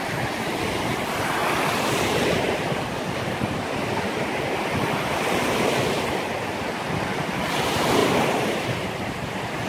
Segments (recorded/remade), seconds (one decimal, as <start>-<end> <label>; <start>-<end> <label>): 0.0-8.0 recorded; 8.0-8.9 remade; 8.9-9.7 recorded